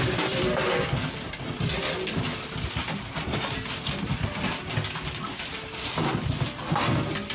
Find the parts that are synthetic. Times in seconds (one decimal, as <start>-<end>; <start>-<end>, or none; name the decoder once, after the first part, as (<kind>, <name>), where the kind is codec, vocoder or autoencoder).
none